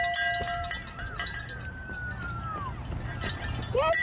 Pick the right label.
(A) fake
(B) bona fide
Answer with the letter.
B